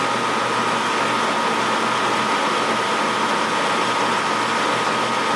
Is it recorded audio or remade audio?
recorded